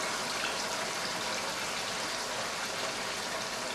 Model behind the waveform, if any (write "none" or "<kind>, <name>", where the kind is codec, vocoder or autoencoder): none